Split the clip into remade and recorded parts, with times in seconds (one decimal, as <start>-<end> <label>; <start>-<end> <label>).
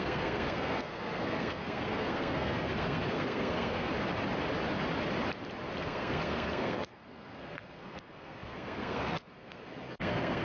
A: 0.0-3.9 remade; 3.9-5.8 recorded; 5.8-10.4 remade